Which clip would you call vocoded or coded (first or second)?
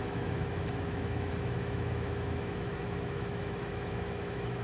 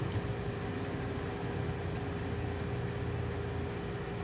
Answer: first